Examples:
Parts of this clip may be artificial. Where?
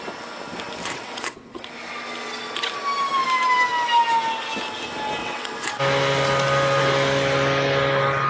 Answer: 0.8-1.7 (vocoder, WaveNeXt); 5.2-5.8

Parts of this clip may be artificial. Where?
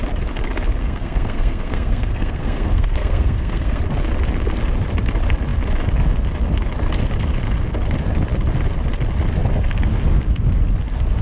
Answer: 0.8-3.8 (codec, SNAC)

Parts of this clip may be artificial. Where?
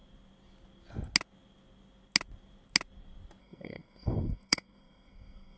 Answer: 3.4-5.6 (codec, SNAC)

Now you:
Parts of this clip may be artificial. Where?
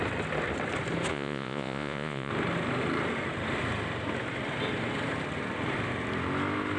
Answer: 1.1-2.3 (vocoder, Vocos)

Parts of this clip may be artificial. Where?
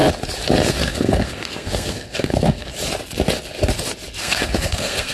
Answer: 0.7-2.7 (codec, SNAC); 4.2-5.1